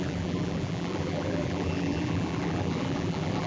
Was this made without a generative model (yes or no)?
no